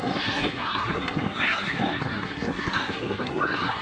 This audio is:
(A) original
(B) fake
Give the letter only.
B